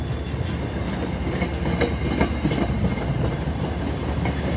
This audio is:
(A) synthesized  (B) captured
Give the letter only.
B